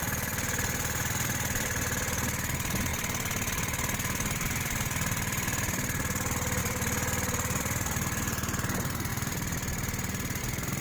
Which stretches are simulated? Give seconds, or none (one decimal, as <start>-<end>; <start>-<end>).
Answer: 0.0-10.8